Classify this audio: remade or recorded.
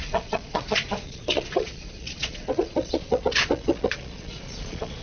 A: remade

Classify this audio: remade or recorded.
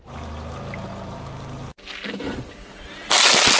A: recorded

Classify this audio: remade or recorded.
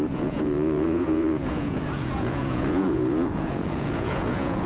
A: remade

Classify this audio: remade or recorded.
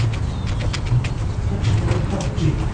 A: recorded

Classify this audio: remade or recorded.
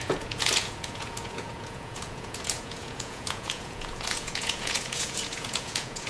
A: remade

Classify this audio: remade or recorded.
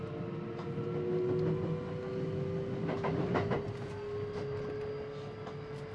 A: recorded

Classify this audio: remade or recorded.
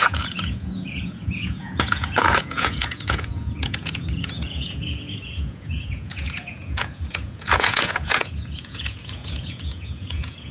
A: remade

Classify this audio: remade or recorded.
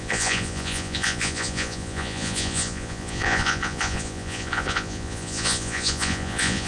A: remade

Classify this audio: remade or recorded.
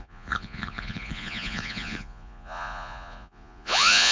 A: remade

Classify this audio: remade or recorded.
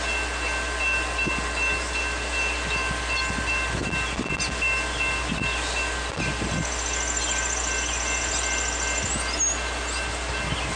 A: recorded